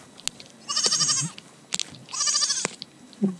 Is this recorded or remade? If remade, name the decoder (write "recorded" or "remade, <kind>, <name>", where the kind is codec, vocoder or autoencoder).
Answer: recorded